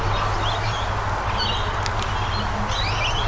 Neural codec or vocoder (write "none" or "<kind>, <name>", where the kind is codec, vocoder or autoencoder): none